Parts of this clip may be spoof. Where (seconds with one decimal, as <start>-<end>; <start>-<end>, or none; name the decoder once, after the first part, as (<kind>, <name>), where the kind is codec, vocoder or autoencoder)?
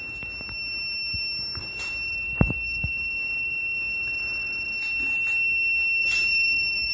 1.6-4.8 (vocoder, BigVGAN v2); 6.0-6.9